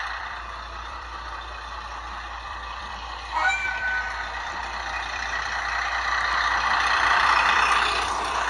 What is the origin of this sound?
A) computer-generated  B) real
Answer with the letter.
A